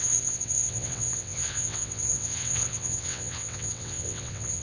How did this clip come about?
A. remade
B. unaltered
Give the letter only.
A